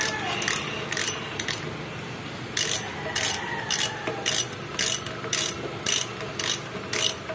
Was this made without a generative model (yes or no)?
yes